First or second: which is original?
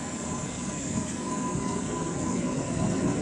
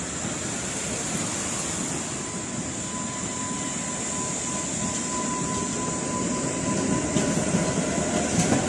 second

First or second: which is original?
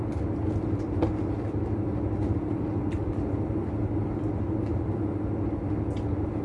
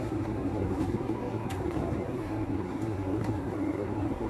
first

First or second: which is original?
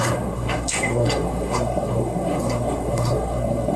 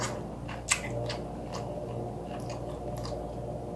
second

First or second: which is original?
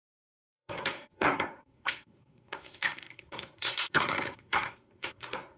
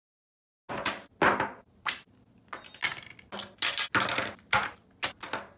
second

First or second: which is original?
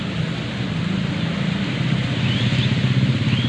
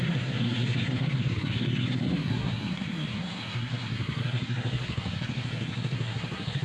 first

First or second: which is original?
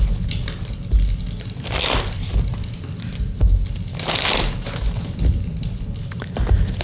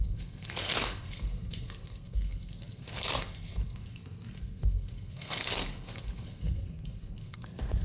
first